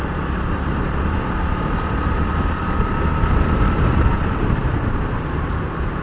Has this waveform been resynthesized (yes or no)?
yes